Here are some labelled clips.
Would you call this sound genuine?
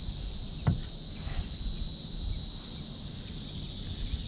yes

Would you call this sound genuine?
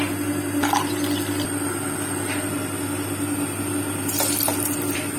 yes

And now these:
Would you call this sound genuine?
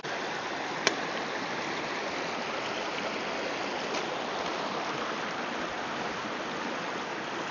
yes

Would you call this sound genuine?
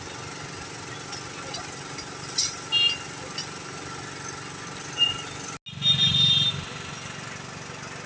yes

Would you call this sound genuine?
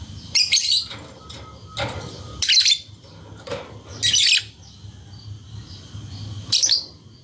yes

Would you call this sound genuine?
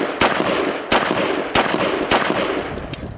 yes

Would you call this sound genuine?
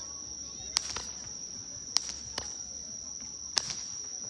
yes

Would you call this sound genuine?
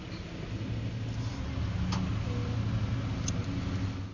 yes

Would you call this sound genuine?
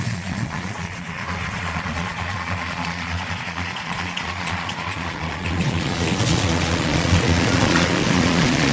no